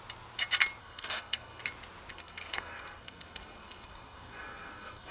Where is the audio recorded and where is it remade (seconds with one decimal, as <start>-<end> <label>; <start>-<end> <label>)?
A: 0.0-0.8 recorded; 0.8-1.6 remade; 1.6-2.1 recorded; 2.1-5.1 remade